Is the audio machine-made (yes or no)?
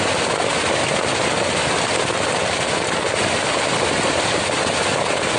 no